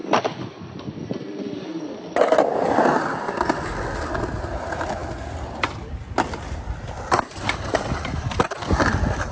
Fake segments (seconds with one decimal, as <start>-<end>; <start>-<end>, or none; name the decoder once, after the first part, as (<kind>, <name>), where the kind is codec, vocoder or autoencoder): 0.0-1.7 (vocoder, BigVGAN v2); 3.7-5.0; 7.3-9.3

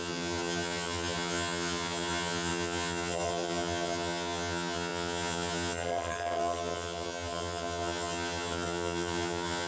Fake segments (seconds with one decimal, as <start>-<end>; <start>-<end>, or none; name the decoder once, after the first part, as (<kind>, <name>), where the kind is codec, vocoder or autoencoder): 0.0-9.7 (vocoder, HiFi-GAN)

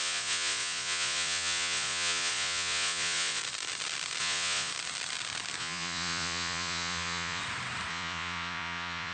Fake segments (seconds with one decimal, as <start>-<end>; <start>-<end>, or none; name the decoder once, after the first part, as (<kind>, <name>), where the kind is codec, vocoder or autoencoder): 0.0-3.4 (vocoder, Vocos); 4.2-4.7; 5.6-7.4; 7.9-9.1

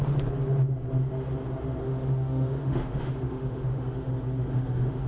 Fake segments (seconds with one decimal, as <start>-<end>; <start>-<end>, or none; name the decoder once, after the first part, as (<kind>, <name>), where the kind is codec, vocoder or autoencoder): 1.8-4.1 (autoencoder, DAC-VAE); 4.5-5.1

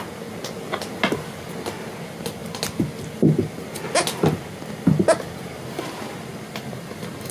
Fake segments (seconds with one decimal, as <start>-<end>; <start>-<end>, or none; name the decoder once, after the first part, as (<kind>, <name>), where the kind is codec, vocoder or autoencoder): none

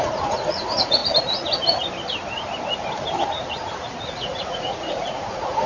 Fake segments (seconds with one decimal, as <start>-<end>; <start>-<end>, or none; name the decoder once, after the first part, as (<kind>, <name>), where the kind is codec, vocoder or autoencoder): 0.0-1.0 (vocoder, Vocos); 4.1-5.7